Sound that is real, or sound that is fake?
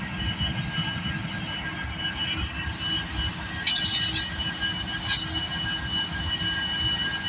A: real